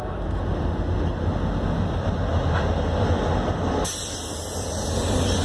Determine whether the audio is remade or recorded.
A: recorded